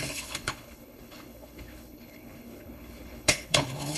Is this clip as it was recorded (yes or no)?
no